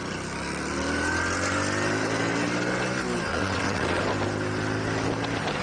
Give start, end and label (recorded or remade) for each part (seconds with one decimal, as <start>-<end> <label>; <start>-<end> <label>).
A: 0.0-3.3 recorded; 3.3-4.0 remade; 4.0-5.6 recorded